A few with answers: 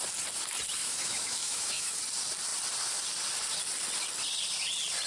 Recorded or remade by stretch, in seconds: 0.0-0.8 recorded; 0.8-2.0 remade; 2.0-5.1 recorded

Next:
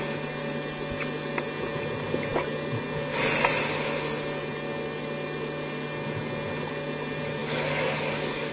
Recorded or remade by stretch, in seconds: 0.0-7.4 recorded; 7.4-8.5 remade

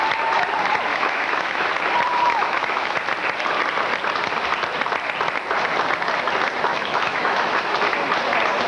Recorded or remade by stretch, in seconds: 0.0-0.9 recorded; 0.9-1.7 remade; 1.7-2.4 recorded; 2.4-2.9 remade; 2.9-6.7 recorded; 6.7-7.6 remade; 7.6-8.7 recorded

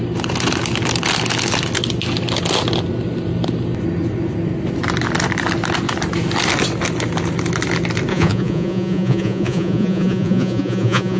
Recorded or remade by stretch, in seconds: 0.0-8.1 recorded; 8.1-11.2 remade

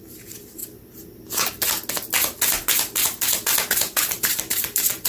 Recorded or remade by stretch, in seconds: 0.0-0.6 remade; 0.6-3.7 recorded; 3.7-5.1 remade